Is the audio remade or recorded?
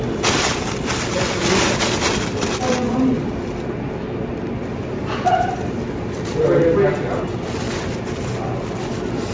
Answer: recorded